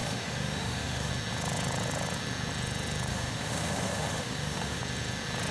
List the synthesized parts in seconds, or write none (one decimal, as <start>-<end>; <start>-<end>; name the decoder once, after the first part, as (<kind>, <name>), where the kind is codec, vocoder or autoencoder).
0.0-1.1 (autoencoder, DAC-VAE); 3.1-4.8